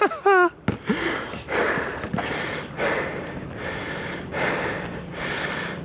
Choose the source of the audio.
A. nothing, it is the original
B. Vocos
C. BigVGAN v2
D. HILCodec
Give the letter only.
A